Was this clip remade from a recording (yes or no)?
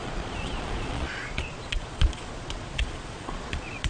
yes